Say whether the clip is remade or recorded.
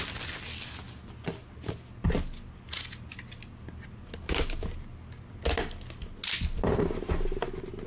recorded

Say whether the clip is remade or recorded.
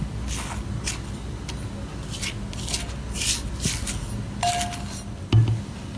recorded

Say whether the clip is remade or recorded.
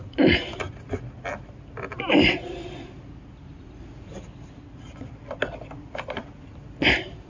recorded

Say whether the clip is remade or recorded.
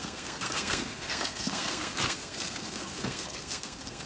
remade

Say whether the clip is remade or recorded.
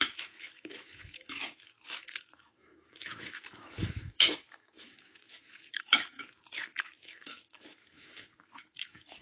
remade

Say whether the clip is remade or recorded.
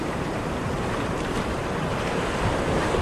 remade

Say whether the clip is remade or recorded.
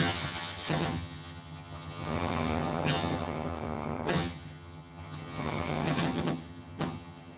remade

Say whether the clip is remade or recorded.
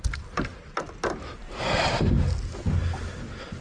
recorded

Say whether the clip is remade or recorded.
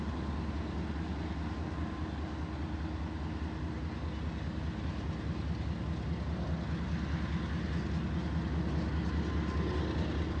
recorded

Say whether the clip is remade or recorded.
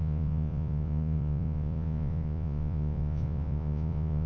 remade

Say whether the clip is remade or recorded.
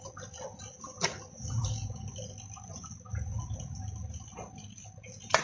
recorded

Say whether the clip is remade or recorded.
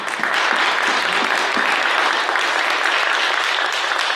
recorded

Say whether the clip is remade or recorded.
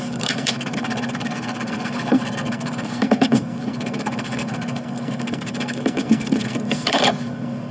remade